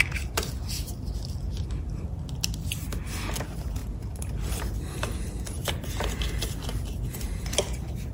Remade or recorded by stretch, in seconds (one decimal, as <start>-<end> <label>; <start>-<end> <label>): 0.0-2.1 recorded; 2.1-3.3 remade; 3.3-8.1 recorded